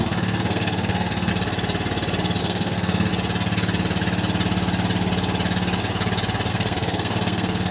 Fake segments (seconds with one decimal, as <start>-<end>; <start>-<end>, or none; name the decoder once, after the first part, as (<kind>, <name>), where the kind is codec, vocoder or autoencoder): 0.0-1.3 (codec, SNAC); 2.4-3.1; 6.5-7.7